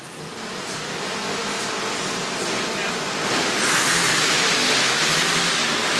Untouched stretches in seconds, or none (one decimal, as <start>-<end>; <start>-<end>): 0.0-6.0